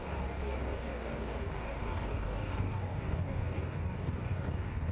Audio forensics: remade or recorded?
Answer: remade